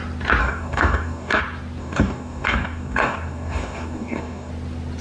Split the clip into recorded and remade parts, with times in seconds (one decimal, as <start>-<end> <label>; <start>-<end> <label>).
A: 0.0-0.4 recorded; 0.4-1.4 remade; 1.4-1.8 recorded; 1.8-4.5 remade; 4.5-5.0 recorded